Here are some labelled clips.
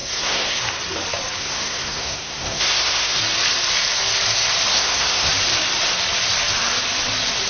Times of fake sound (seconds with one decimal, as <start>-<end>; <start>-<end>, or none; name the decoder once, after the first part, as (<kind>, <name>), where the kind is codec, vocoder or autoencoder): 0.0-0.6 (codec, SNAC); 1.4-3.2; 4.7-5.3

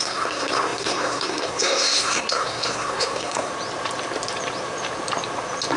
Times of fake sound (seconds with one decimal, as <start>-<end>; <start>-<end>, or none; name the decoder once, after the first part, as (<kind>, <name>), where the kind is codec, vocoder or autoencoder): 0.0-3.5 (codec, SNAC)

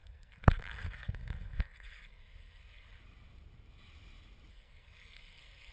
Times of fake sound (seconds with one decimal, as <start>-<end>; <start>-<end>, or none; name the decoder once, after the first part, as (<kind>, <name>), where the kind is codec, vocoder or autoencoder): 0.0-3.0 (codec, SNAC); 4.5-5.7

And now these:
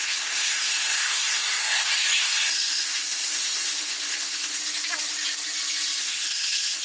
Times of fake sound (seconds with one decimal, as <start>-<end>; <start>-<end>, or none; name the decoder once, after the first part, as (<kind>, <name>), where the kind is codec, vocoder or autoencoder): 0.0-4.6 (codec, SNAC); 6.0-6.8

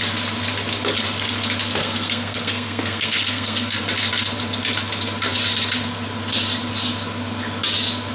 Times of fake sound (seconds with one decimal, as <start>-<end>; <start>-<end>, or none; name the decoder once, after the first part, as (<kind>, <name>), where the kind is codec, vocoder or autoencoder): 1.8-3.8 (codec, SNAC)

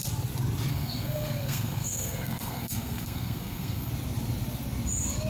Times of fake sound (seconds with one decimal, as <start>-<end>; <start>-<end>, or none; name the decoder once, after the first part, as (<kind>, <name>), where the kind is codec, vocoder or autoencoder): 0.7-3.9 (codec, SNAC)

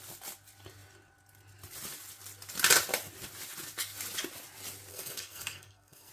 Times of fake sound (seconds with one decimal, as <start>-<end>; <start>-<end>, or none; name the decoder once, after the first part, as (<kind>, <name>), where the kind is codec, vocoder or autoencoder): 4.9-6.1 (codec, SNAC)